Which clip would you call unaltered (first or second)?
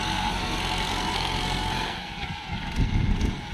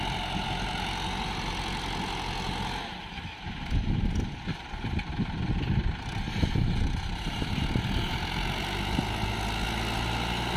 second